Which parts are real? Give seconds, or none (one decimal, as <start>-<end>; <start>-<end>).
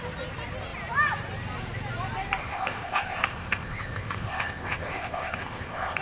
0.0-2.4